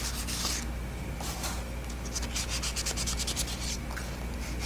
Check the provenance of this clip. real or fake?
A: real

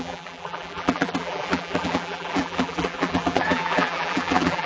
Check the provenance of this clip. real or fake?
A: fake